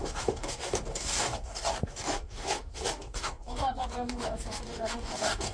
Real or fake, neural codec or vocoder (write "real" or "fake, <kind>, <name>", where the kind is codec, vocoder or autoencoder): fake, codec, DAC